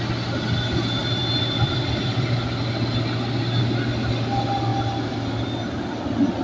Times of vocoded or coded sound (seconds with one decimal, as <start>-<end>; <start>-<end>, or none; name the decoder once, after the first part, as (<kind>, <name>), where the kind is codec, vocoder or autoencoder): 1.0-2.4 (vocoder, BigVGAN v2)